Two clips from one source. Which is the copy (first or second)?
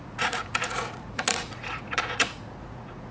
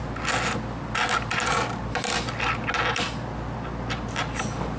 first